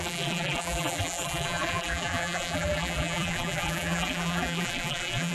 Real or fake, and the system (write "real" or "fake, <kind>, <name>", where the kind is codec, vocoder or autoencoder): fake, vocoder, BigVGAN v2